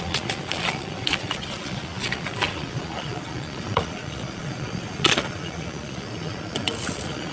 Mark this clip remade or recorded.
remade